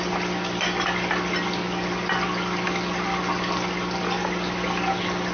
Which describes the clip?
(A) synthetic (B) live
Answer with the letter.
B